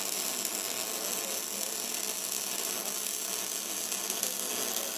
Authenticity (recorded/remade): recorded